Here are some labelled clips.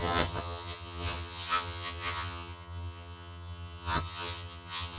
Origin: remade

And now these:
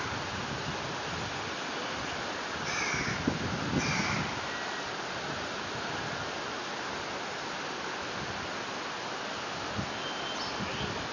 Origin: recorded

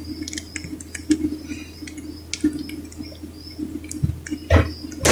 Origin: recorded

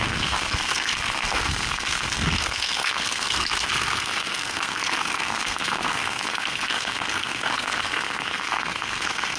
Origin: remade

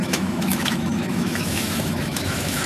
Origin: remade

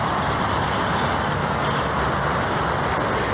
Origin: recorded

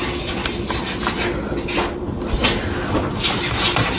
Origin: recorded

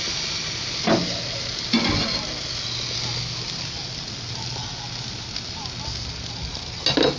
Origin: recorded